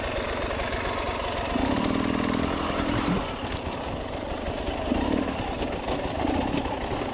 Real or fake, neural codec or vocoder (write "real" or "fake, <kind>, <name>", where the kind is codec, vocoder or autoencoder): real